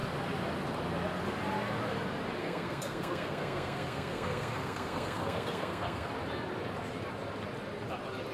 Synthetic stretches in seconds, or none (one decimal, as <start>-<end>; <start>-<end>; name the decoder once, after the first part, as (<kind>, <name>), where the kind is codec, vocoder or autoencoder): 2.4-6.1 (codec, SNAC)